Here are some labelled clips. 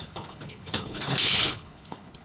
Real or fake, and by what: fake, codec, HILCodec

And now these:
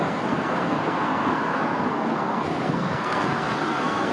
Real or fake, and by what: fake, codec, SNAC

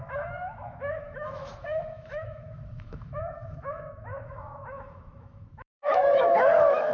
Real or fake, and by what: fake, autoencoder, DAC-VAE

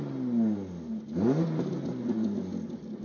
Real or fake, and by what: real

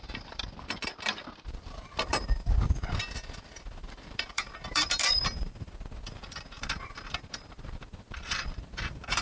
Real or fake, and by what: fake, vocoder, BigVGAN v2